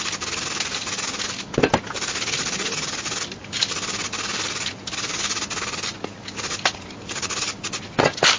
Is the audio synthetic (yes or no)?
no